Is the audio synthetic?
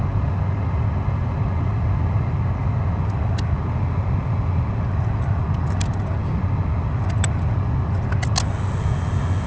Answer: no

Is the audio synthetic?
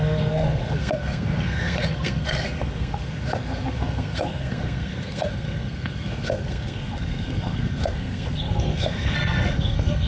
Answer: yes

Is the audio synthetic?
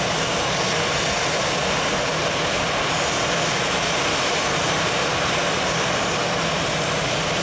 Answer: no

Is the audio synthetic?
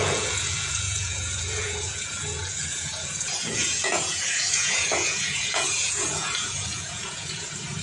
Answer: yes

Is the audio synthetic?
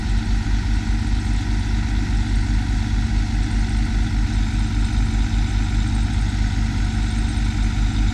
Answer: no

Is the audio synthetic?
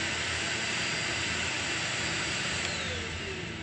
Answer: no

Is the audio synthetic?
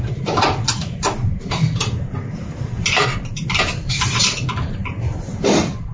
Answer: no